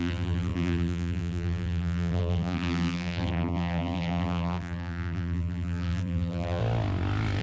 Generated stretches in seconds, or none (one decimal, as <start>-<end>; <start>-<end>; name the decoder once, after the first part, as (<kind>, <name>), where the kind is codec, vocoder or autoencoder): 0.0-6.6 (vocoder, BigVGAN v2)